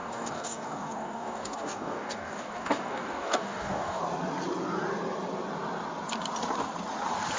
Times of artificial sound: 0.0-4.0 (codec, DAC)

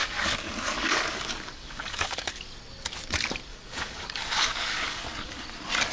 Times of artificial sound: 0.0-2.4 (codec, DAC); 3.5-5.4

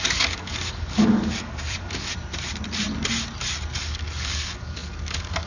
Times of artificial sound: 0.0-2.1 (codec, DAC); 3.8-5.5

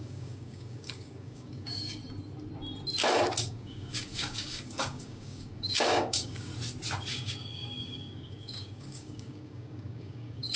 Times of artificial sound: 0.0-2.0 (codec, DAC); 3.4-6.5; 7.1-10.6

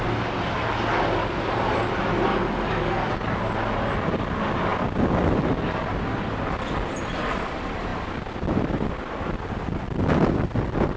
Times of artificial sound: 2.3-3.1 (codec, DAC)

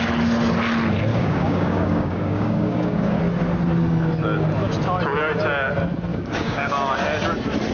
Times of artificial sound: 1.1-3.2 (codec, DAC); 6.1-6.7

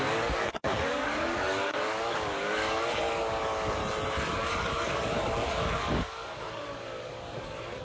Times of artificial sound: 0.0-3.8 (codec, DAC); 4.3-7.8

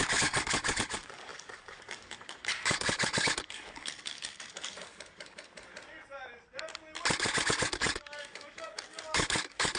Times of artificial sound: 0.0-5.7 (codec, DAC); 7.2-9.8